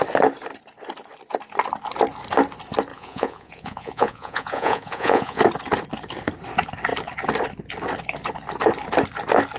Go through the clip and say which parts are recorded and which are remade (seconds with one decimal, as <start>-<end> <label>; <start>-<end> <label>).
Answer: 0.0-2.9 recorded; 2.9-5.4 remade; 5.4-9.6 recorded

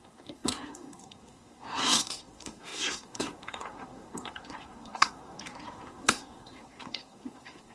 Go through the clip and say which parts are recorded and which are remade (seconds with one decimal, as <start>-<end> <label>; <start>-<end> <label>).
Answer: 0.0-7.7 remade

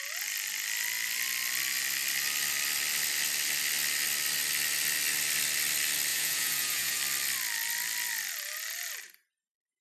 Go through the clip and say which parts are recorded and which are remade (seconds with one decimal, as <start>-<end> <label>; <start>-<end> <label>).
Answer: 0.0-6.1 recorded; 6.1-7.0 remade; 7.0-9.8 recorded